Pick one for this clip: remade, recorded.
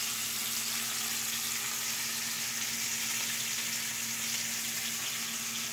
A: recorded